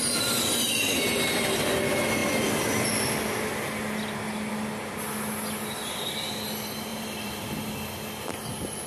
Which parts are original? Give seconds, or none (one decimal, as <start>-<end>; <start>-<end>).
0.0-1.1; 1.7-6.9; 7.5-8.9